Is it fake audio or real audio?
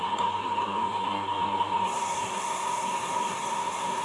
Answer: fake